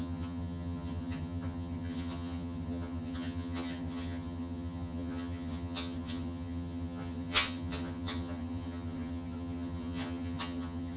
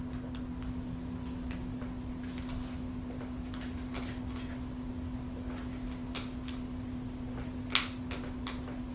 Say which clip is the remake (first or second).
first